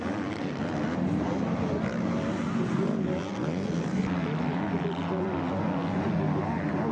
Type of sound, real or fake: real